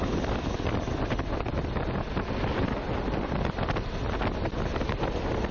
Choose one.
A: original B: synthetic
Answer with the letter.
A